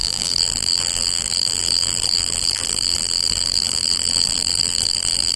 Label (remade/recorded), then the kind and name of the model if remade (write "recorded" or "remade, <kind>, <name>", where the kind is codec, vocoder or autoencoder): remade, vocoder, BigVGAN v2